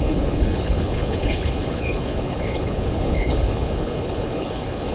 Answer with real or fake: fake